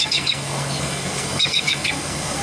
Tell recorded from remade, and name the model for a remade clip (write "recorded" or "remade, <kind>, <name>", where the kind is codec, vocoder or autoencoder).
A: remade, codec, SNAC